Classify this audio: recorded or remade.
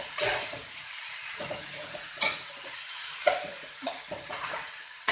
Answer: remade